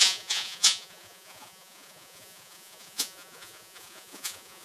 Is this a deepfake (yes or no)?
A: yes